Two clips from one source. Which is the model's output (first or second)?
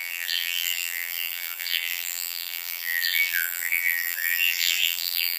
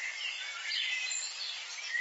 first